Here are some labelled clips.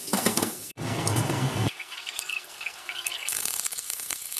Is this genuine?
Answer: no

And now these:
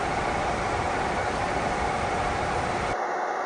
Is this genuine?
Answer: yes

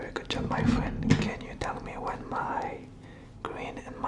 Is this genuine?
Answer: yes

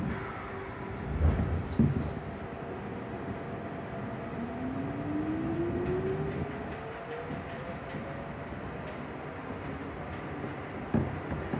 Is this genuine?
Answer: yes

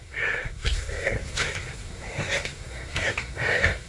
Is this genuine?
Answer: no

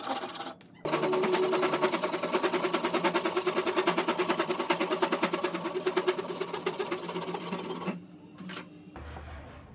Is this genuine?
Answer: yes